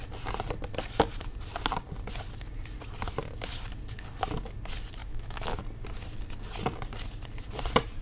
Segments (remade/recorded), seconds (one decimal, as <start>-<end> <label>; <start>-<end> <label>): 0.0-5.0 recorded; 5.0-5.6 remade; 5.6-8.0 recorded